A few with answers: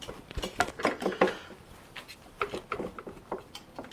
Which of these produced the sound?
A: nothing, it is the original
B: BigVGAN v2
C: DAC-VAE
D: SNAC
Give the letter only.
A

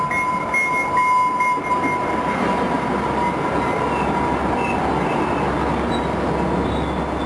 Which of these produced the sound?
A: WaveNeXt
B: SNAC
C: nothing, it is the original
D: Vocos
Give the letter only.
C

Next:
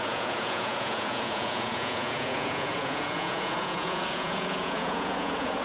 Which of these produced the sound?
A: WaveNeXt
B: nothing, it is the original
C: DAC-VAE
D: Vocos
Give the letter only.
D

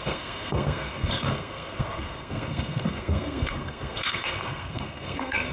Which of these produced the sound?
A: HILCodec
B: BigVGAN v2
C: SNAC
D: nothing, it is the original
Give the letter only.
C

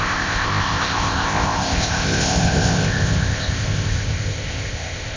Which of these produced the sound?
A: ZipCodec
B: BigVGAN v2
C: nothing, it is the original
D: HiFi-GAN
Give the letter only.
A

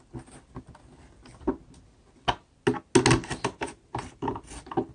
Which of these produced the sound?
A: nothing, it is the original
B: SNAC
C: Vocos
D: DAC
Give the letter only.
A